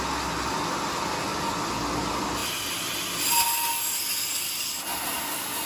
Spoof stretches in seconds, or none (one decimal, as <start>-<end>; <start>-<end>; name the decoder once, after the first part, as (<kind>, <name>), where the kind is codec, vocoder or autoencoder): none